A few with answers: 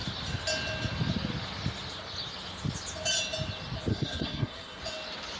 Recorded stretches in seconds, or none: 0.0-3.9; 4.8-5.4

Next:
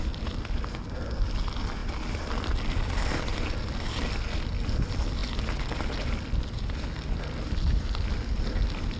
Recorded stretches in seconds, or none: 0.0-1.8; 3.9-5.2; 7.2-9.0

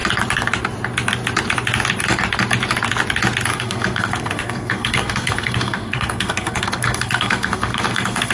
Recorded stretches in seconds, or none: 0.0-3.5

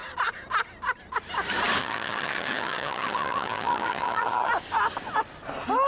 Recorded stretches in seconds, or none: 0.0-1.8; 4.5-5.9

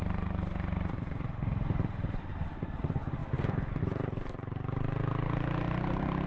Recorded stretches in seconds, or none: 3.2-3.8

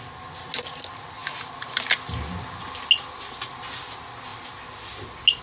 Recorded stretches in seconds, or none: 0.0-5.4